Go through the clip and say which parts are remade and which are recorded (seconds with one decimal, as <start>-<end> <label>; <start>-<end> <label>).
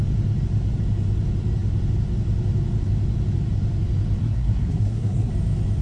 0.0-4.2 recorded; 4.2-5.3 remade; 5.3-5.8 recorded